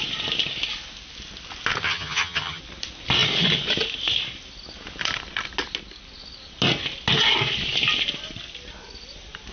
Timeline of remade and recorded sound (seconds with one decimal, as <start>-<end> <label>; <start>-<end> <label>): 0.0-1.8 recorded; 1.8-2.6 remade; 2.6-9.5 recorded